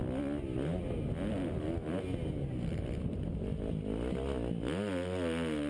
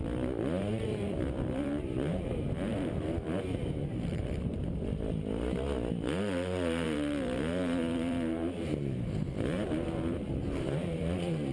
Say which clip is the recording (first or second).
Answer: first